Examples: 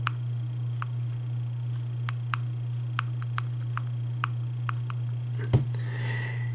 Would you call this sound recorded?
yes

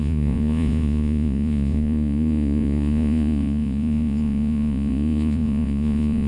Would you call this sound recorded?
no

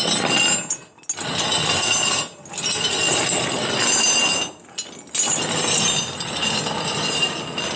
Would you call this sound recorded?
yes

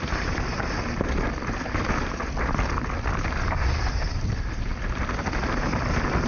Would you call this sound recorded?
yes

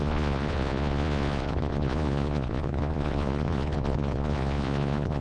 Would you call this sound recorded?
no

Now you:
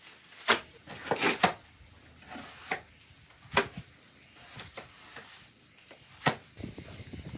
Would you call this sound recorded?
yes